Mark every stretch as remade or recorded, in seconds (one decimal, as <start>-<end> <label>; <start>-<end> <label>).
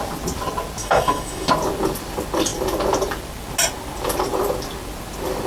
0.0-0.8 recorded; 0.8-1.5 remade; 1.5-5.5 recorded